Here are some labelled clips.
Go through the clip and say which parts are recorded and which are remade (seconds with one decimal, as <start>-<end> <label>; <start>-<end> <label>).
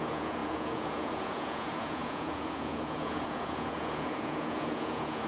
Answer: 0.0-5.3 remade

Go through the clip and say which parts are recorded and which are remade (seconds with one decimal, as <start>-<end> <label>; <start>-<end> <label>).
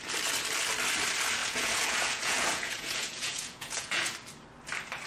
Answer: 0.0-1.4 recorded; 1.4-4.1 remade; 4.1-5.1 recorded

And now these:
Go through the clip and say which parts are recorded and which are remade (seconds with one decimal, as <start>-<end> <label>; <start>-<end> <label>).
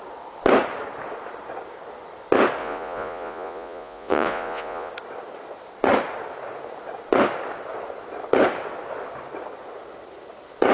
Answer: 0.0-2.6 recorded; 2.6-4.9 remade; 4.9-10.7 recorded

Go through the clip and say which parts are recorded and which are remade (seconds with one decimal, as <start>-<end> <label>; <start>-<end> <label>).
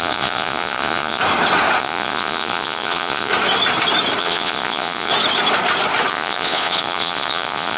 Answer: 0.0-1.2 remade; 1.2-1.8 recorded; 1.8-3.3 remade; 3.3-4.2 recorded; 4.2-5.1 remade; 5.1-6.1 recorded; 6.1-7.8 remade